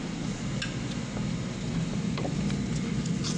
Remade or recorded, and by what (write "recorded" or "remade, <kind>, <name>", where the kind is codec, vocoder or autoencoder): recorded